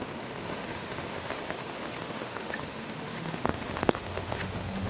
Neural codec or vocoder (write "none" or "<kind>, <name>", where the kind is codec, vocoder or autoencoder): autoencoder, DAC-VAE